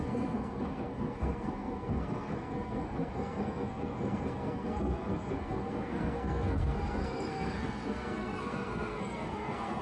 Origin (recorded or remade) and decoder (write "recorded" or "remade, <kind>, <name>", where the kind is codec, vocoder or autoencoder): remade, codec, SNAC